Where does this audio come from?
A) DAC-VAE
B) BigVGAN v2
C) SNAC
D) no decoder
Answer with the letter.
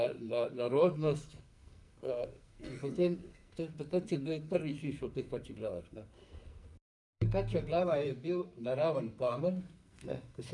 C